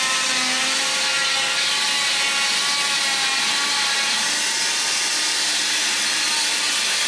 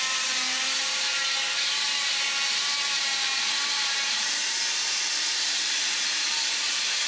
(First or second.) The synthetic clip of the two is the second